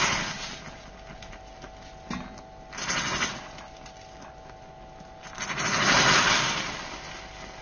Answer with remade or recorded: recorded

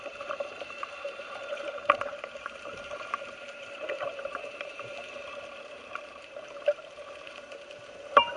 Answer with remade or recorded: remade